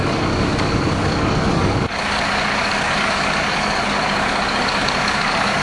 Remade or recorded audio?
remade